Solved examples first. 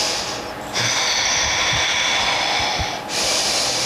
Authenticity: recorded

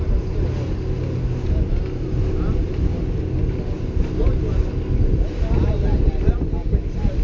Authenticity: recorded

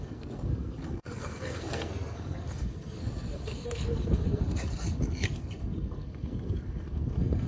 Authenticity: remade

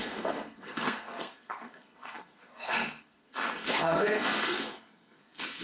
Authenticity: remade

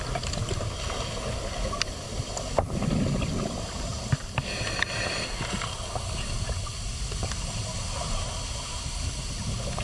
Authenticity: recorded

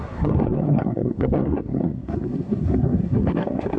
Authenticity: remade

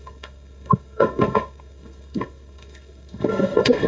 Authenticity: remade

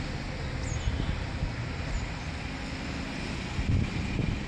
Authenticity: recorded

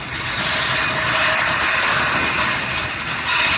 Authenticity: recorded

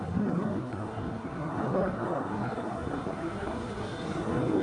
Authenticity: remade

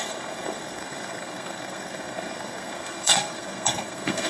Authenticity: remade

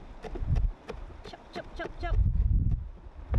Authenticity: recorded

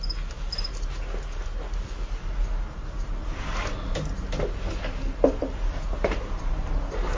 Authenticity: recorded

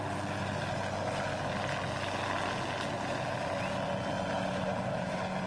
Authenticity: recorded